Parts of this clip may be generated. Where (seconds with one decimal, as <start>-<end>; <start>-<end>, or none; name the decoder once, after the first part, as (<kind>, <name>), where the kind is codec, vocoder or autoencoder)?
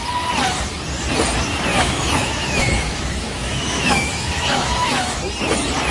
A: 1.7-5.2 (autoencoder, DAC-VAE)